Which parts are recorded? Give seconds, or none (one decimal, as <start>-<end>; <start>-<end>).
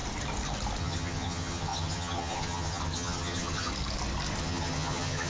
0.0-0.8; 3.7-4.4